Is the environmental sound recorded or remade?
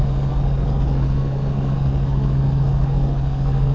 remade